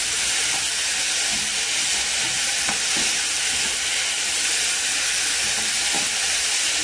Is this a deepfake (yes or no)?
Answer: no